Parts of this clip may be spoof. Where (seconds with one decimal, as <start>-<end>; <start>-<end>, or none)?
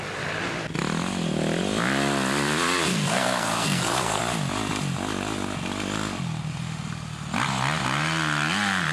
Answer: 2.9-4.2